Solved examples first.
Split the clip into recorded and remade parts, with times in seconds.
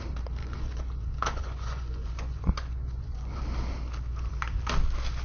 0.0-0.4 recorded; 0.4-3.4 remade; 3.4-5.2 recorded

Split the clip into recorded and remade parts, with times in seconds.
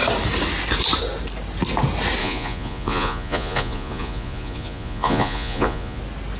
0.0-2.2 recorded; 2.2-6.0 remade; 6.0-6.4 recorded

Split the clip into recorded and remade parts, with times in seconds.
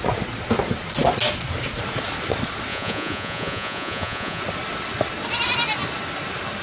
0.0-2.7 recorded; 2.7-4.4 remade; 4.4-6.6 recorded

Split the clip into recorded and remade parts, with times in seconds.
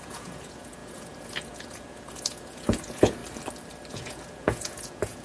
0.0-3.2 remade; 3.2-3.9 recorded; 3.9-5.2 remade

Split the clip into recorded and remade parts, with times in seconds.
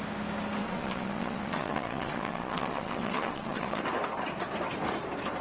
0.0-0.6 recorded; 0.6-3.8 remade; 3.8-5.4 recorded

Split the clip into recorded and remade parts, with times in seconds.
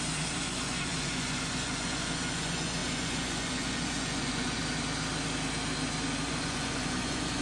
0.0-4.6 remade; 4.6-6.3 recorded; 6.3-7.4 remade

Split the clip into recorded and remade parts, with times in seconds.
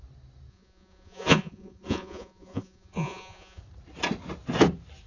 0.0-0.5 recorded; 0.5-3.6 remade; 3.6-5.1 recorded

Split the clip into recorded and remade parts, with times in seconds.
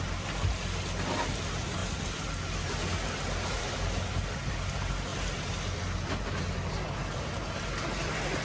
0.0-8.4 recorded